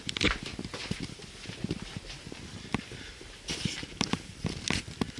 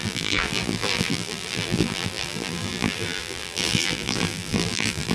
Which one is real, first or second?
first